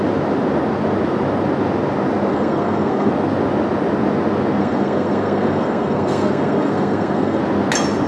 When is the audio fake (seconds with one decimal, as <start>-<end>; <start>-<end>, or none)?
2.3-3.1; 4.6-7.4